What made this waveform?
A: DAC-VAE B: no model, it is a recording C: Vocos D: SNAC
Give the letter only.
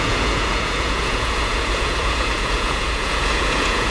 C